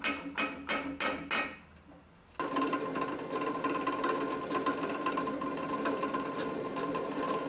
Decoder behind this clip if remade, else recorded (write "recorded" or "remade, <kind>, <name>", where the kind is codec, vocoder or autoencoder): recorded